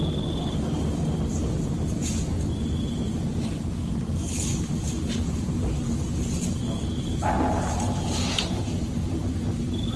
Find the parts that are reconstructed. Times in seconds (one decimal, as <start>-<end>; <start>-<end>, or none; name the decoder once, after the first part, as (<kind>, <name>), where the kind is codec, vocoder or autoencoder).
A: none